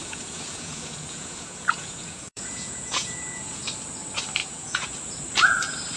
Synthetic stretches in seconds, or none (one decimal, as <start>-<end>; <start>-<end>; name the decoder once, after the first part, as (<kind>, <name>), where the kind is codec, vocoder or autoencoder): 0.0-3.6 (vocoder, Vocos); 4.4-4.9